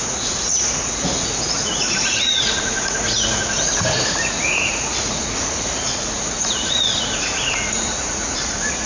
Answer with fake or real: fake